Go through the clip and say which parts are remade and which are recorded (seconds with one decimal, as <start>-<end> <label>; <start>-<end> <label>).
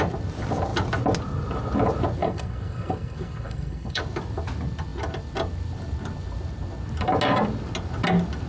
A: 0.0-2.2 recorded; 2.2-4.0 remade; 4.0-8.5 recorded